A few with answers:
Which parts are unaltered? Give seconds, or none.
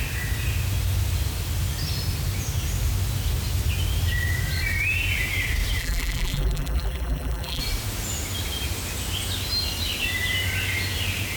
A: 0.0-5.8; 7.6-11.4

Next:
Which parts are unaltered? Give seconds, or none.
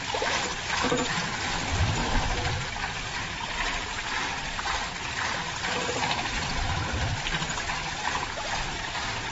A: 0.0-9.3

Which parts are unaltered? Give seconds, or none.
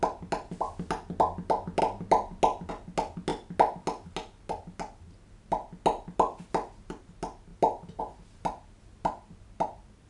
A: 0.0-10.1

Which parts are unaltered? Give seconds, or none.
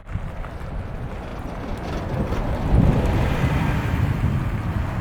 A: 0.7-1.3; 3.9-5.0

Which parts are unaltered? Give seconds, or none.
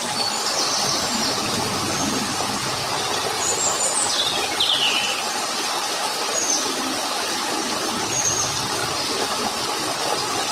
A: 0.0-8.8; 9.4-10.5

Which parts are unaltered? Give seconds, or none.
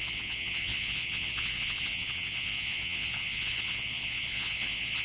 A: none